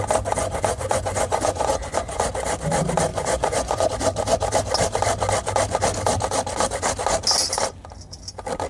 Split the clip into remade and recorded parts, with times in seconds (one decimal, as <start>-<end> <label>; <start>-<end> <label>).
0.0-0.4 recorded; 0.4-2.3 remade; 2.3-3.1 recorded; 3.1-3.9 remade; 3.9-8.7 recorded